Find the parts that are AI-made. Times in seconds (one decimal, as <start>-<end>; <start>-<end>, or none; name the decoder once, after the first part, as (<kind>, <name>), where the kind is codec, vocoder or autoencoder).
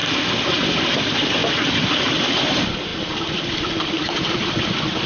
0.0-5.1 (vocoder, BigVGAN v2)